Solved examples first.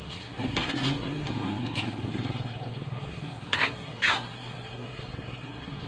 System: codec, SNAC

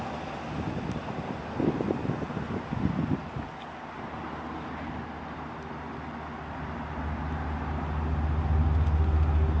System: none